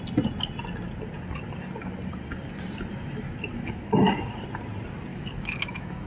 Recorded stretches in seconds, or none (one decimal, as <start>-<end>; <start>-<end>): 0.0-5.1